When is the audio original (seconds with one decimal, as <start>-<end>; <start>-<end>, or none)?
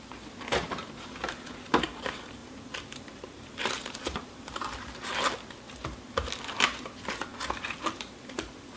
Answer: 0.0-2.4; 5.0-8.8